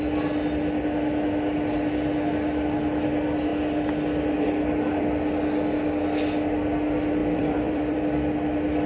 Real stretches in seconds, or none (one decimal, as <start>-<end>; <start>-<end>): 0.0-7.2; 8.0-8.9